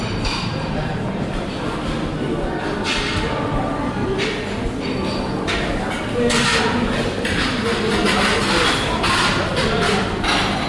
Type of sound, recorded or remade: recorded